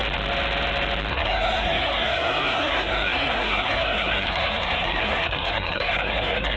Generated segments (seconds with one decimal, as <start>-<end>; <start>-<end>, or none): 1.1-6.6